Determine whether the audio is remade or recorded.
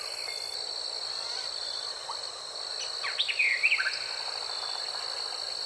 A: recorded